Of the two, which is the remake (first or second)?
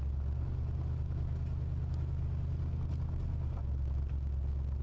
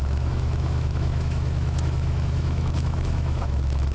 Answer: second